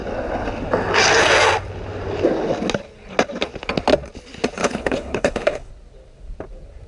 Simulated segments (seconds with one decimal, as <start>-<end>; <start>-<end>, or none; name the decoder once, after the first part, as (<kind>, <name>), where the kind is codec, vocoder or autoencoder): 4.6-5.7 (codec, HILCodec)